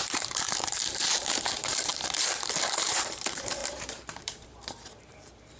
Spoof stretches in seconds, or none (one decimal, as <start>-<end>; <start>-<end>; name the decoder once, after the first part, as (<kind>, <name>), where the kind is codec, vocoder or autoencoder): 0.0-5.6 (vocoder, BigVGAN v2)